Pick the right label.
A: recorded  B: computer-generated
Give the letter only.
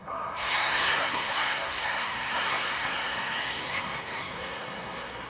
B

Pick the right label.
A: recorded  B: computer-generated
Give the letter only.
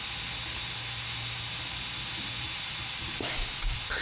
A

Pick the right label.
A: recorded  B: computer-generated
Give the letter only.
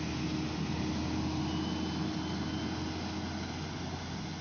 A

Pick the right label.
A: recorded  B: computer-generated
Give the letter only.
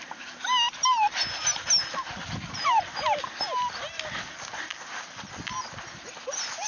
A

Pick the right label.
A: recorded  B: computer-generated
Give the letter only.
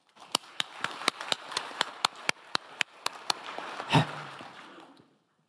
B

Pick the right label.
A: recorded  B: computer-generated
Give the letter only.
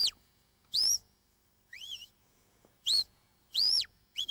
B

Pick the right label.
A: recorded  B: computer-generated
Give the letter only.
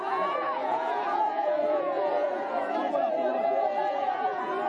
B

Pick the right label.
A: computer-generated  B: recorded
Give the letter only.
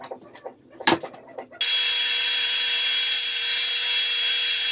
B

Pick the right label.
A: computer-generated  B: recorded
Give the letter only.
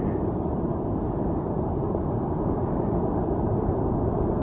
B